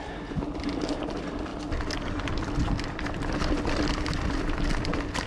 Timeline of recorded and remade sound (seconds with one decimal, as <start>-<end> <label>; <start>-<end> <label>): 0.0-5.3 recorded